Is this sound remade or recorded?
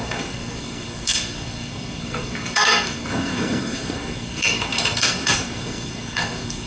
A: remade